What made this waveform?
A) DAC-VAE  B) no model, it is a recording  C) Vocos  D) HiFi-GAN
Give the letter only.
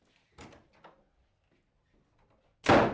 B